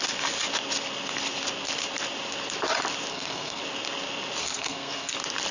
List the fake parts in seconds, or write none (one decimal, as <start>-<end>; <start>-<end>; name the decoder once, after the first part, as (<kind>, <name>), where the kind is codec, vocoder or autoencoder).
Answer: 3.1-3.6 (codec, SNAC); 4.4-5.1